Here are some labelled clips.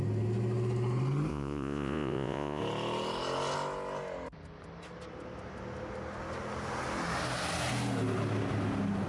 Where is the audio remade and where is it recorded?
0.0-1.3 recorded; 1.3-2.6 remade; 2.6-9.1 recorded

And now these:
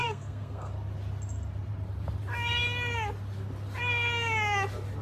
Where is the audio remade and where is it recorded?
0.0-0.7 remade; 0.7-5.0 recorded